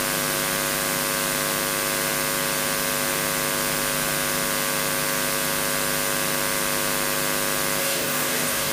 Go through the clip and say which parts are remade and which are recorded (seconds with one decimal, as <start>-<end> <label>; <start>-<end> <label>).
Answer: 0.0-7.8 recorded; 7.8-8.7 remade